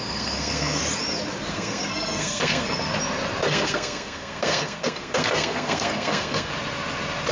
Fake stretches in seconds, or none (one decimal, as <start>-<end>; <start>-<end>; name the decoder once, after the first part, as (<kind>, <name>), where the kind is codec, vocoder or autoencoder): 0.0-0.8 (codec, SNAC); 1.5-2.9; 3.5-6.5